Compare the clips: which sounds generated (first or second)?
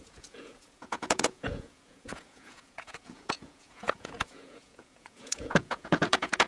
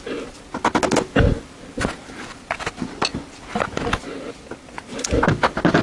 first